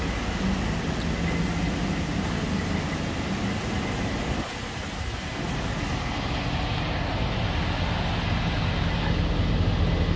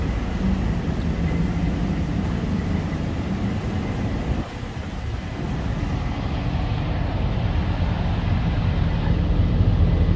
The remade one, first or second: second